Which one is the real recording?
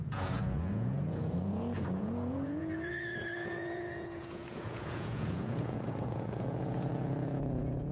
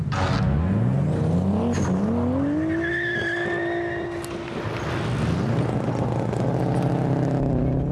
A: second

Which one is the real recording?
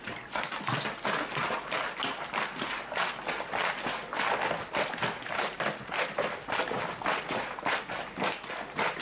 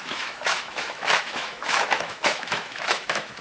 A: first